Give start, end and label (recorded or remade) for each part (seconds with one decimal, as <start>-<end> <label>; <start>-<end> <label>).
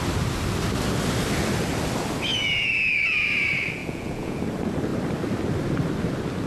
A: 0.0-2.3 recorded; 2.3-3.3 remade; 3.3-3.8 recorded; 3.8-4.4 remade; 4.4-6.5 recorded